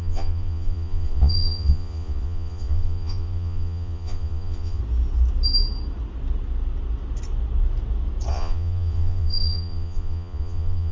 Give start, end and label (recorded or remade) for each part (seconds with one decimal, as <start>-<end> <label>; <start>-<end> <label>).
0.0-4.8 remade; 4.8-8.3 recorded; 8.3-10.9 remade